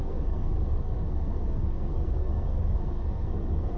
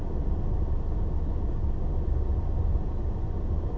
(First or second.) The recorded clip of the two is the second